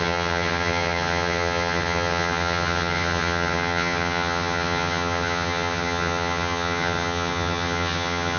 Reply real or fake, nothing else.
fake